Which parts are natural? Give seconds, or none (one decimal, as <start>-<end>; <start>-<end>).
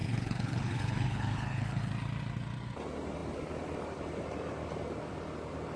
1.9-5.8